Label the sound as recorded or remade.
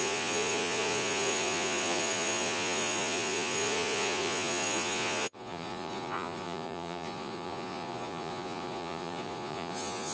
remade